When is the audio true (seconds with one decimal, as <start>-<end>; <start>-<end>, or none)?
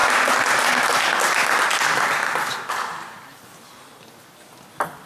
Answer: 0.0-5.1